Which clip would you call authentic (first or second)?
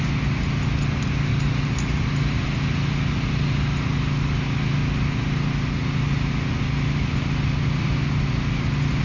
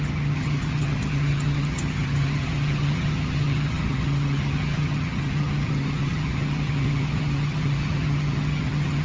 first